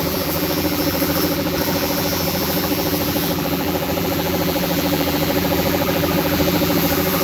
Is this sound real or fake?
fake